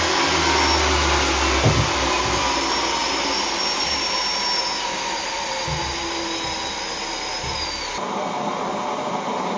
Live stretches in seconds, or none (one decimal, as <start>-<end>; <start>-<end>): 0.0-9.6